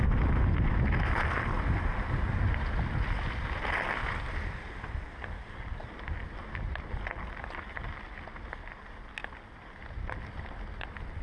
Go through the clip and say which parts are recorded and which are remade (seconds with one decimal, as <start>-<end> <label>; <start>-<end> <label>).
0.0-11.2 recorded